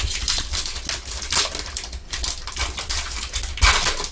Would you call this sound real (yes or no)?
yes